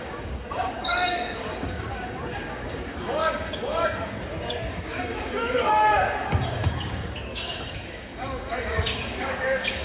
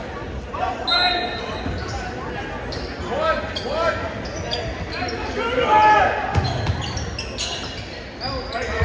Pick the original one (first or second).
second